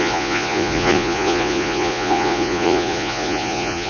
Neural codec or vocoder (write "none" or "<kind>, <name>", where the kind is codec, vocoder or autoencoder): vocoder, Vocos